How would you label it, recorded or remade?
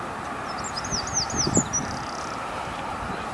recorded